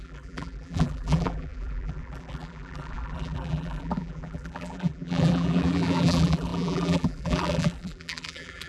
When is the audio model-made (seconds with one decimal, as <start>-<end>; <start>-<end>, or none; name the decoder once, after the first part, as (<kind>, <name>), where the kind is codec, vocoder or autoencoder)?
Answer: 0.0-8.7 (vocoder, BigVGAN v2)

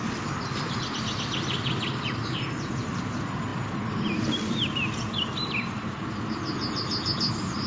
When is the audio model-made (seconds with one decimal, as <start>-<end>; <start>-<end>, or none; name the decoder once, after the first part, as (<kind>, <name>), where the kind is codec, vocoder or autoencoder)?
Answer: none

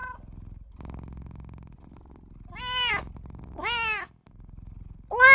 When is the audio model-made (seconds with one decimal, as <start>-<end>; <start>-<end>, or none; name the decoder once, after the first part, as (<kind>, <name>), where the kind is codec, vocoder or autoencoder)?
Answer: none

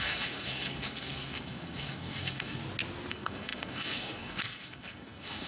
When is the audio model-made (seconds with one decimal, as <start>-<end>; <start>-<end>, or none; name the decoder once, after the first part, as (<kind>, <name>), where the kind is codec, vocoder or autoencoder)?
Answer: 0.0-2.6 (codec, SNAC); 3.1-5.5

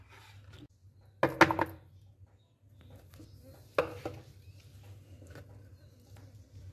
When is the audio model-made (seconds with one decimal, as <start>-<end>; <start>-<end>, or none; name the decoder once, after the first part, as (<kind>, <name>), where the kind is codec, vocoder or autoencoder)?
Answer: none